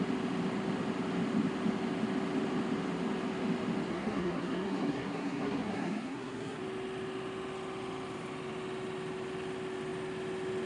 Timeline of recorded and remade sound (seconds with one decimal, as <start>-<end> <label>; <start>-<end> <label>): 0.0-3.9 recorded; 3.9-6.6 remade; 6.6-10.7 recorded